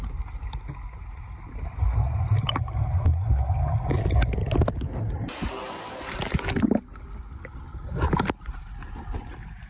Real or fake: real